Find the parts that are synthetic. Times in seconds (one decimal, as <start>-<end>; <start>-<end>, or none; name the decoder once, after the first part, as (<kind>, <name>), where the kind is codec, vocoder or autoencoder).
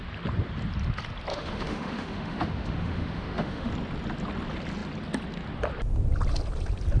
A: 1.3-3.7 (autoencoder, DAC-VAE)